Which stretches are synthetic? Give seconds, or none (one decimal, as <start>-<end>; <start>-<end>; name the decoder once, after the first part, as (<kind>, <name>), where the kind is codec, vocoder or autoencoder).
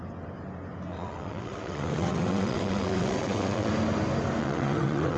0.9-3.7 (vocoder, WaveNeXt); 4.4-5.2